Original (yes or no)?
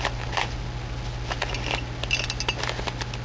yes